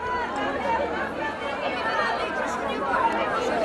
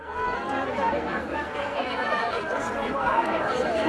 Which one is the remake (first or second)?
second